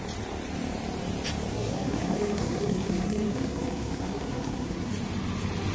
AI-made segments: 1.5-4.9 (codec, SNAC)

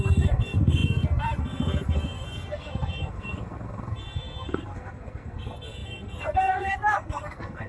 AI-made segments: 0.0-7.7 (codec, SNAC)